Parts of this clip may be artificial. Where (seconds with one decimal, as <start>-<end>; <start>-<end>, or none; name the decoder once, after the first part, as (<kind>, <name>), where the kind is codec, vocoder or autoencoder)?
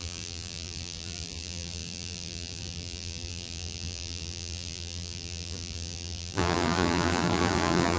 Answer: 0.0-8.0 (vocoder, BigVGAN v2)